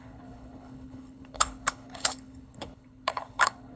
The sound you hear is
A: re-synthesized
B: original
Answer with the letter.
A